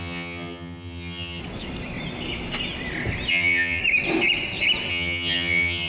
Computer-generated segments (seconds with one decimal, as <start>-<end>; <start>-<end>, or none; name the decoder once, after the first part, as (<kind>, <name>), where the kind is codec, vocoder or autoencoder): 0.0-1.4 (vocoder, HiFi-GAN); 3.3-3.8; 4.9-5.9